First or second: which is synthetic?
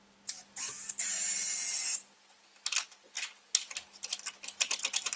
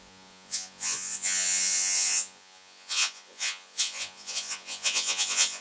second